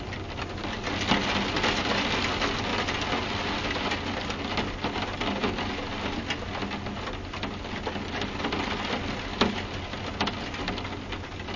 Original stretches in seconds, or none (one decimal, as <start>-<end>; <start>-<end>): 0.0-11.6